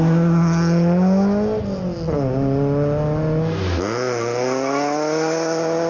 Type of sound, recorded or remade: recorded